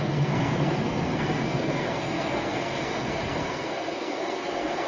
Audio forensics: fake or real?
fake